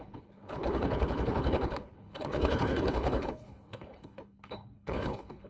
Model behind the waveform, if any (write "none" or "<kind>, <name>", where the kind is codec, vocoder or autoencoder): codec, HILCodec